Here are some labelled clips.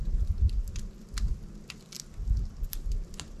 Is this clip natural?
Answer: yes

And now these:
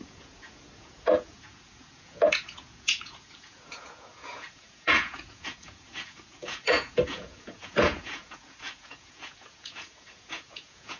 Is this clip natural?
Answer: no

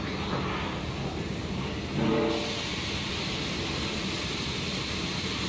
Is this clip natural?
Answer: yes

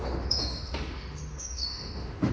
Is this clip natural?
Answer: no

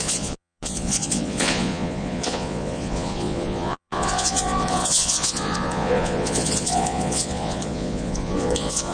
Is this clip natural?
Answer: no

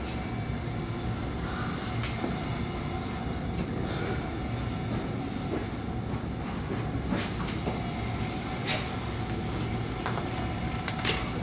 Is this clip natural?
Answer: yes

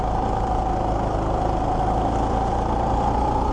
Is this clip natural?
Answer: yes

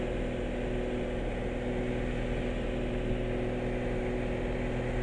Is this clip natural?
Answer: yes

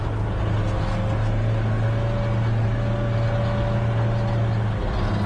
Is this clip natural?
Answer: yes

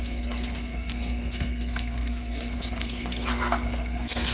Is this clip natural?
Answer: no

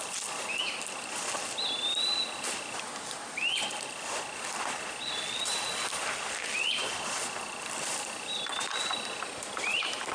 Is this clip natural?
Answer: yes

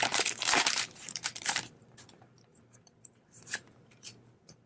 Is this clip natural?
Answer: no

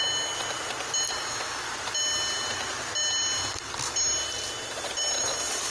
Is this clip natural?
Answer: yes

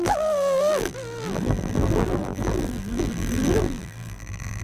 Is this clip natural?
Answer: no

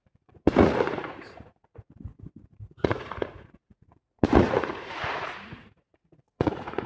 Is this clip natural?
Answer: no